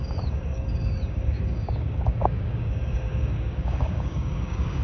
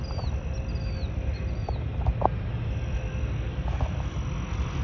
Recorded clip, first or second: second